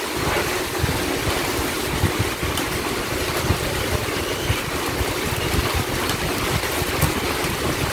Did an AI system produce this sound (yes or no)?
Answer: no